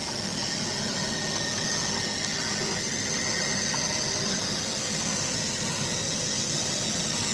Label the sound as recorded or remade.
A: recorded